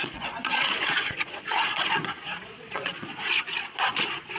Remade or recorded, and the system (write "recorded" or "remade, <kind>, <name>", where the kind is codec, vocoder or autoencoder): remade, vocoder, Vocos